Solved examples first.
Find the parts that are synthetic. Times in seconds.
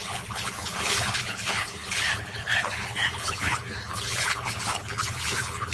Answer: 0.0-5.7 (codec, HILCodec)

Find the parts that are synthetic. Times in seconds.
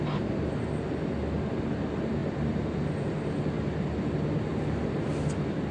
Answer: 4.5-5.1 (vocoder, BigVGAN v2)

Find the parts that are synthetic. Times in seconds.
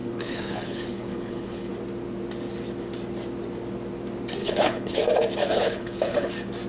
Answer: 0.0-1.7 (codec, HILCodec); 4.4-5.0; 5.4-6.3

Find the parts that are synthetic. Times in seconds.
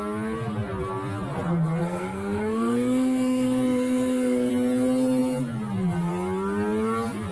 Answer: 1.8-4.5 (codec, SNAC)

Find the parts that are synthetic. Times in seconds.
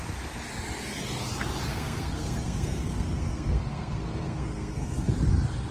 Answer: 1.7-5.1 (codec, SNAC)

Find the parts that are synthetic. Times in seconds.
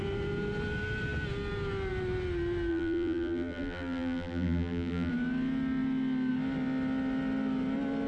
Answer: 2.7-5.1 (vocoder, BigVGAN v2)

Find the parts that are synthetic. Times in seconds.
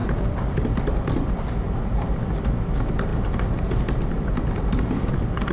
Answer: none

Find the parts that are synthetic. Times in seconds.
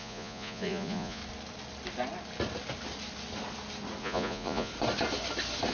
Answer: 0.0-1.2 (vocoder, Vocos); 4.0-4.7